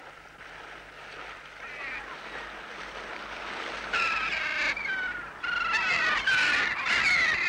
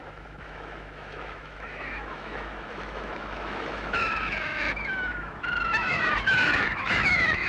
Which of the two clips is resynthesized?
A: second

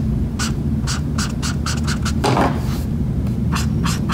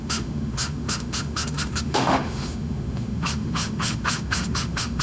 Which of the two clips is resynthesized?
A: second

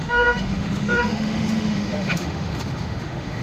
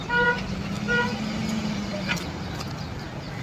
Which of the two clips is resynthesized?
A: first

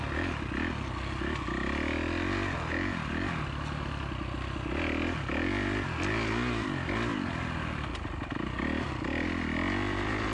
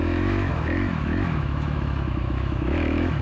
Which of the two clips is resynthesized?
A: second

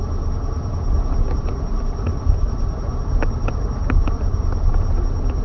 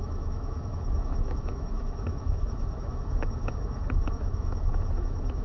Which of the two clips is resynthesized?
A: second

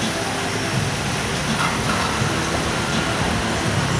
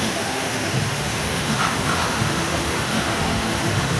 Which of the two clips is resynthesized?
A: second